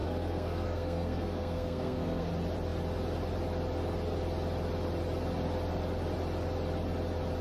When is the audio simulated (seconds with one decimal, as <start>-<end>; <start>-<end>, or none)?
0.0-2.3